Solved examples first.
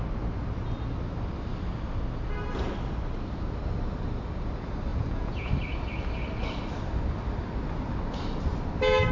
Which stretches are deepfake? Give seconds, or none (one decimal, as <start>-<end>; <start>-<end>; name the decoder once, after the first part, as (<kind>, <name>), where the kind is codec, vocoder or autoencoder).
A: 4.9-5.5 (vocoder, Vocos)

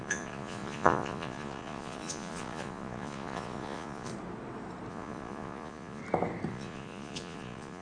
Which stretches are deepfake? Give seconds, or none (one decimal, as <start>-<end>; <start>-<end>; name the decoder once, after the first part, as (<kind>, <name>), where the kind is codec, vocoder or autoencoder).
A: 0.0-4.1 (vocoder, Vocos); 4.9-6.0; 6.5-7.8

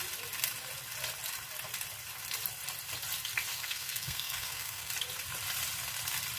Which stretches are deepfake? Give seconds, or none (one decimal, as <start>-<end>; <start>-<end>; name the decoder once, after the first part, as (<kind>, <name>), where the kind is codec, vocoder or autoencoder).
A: 3.5-4.9 (codec, SNAC)

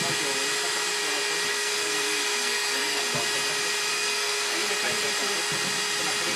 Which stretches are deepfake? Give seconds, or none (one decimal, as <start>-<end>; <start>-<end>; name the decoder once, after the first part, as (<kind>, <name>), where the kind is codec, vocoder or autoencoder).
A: 1.5-3.0 (codec, SNAC); 3.9-4.7